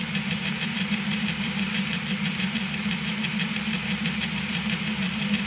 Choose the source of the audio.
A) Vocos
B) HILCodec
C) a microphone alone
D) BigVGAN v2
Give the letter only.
D